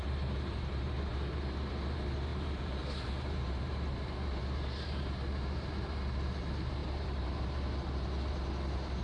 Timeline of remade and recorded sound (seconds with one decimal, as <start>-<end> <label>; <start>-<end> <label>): 0.0-9.0 remade